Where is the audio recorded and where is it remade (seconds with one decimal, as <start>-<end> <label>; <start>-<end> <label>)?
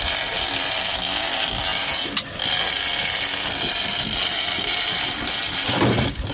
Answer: 0.0-6.3 recorded